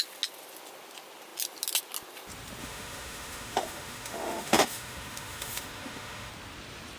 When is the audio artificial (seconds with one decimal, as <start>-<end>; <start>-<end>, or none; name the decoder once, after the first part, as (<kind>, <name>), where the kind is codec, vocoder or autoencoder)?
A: 2.6-6.3 (autoencoder, DAC-VAE)